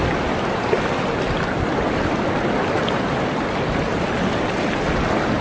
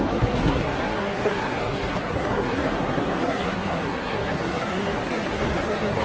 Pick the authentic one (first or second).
first